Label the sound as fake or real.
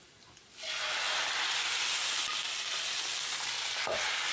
real